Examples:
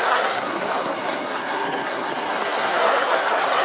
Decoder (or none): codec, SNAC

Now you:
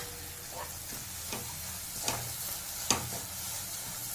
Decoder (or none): none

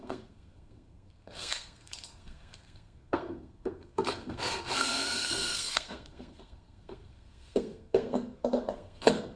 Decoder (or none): codec, SNAC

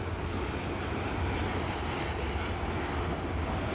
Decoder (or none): none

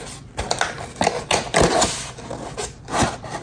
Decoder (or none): none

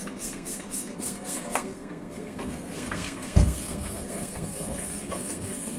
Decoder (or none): codec, SNAC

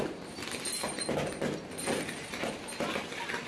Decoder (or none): none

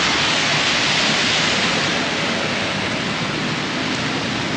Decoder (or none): none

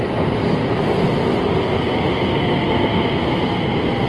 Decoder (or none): none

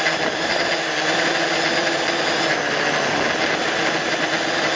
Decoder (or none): none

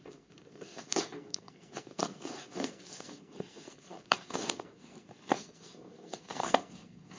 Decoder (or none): codec, SNAC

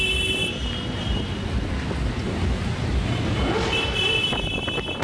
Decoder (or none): none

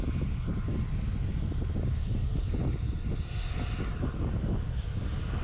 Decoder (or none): none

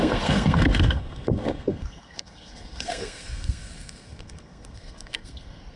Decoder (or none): codec, SNAC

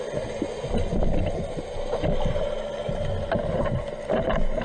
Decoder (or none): none